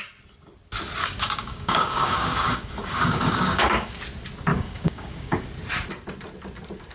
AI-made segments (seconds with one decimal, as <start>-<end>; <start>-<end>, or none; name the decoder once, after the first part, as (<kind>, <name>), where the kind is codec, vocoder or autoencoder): 1.0-4.0 (codec, DAC); 4.5-5.4